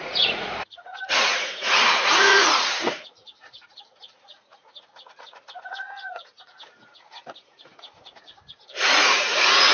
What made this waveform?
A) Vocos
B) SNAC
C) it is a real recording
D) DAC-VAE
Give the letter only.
A